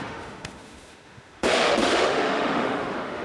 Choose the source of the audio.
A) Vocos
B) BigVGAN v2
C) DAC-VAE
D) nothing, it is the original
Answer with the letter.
C